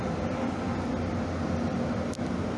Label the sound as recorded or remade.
recorded